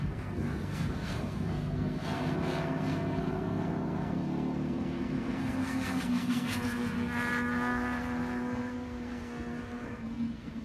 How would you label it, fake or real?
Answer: fake